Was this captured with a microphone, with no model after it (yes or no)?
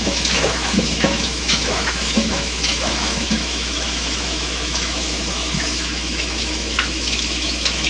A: no